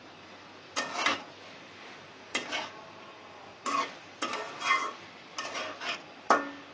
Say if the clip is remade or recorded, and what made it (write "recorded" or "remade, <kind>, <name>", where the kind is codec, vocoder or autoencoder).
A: recorded